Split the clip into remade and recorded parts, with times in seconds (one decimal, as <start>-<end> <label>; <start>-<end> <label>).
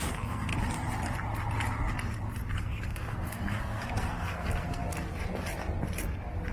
0.0-0.5 remade; 0.5-2.6 recorded; 2.6-4.8 remade; 4.8-6.5 recorded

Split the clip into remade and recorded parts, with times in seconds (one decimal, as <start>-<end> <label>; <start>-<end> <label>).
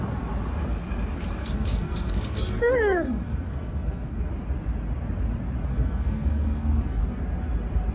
0.0-1.4 recorded; 1.4-4.3 remade; 4.3-5.7 recorded; 5.7-7.0 remade; 7.0-7.9 recorded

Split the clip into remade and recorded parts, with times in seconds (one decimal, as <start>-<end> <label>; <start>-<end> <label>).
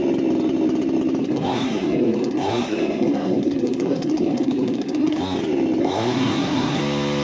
0.0-1.2 recorded; 1.2-5.2 remade; 5.2-5.8 recorded; 5.8-6.8 remade; 6.8-7.2 recorded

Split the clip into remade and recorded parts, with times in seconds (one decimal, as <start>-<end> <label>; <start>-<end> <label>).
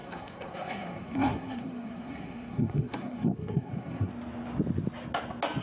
0.0-4.1 remade; 4.1-5.6 recorded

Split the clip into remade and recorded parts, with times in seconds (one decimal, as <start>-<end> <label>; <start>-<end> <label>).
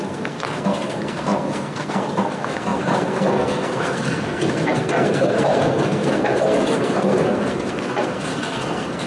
0.0-9.1 remade